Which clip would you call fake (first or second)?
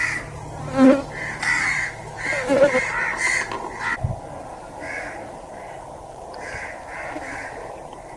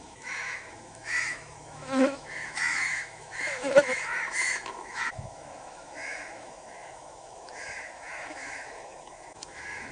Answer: second